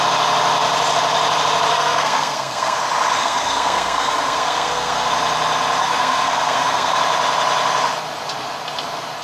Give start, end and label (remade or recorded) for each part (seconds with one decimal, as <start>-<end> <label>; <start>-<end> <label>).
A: 0.0-1.7 recorded; 1.7-2.8 remade; 2.8-3.2 recorded; 3.2-5.1 remade; 5.1-5.8 recorded; 5.8-7.0 remade; 7.0-9.2 recorded

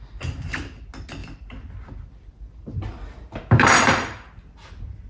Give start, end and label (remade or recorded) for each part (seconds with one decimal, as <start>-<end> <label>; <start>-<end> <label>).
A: 0.0-1.2 recorded; 1.2-4.3 remade; 4.3-5.1 recorded

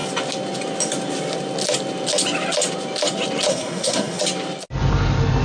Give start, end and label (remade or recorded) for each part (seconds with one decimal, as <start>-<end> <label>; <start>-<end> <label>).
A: 0.0-3.5 recorded; 3.5-4.2 remade; 4.2-5.4 recorded

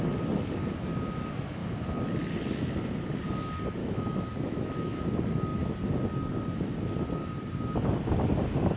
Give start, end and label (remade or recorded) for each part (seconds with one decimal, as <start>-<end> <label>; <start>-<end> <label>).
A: 0.0-3.8 recorded; 3.8-5.0 remade; 5.0-8.8 recorded

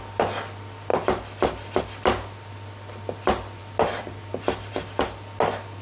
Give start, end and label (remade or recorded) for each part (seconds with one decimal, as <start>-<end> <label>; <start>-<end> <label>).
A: 0.0-3.6 recorded; 3.6-4.7 remade; 4.7-5.8 recorded

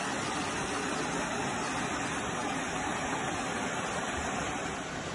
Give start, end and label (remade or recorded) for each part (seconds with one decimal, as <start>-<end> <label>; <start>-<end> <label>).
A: 0.0-5.1 recorded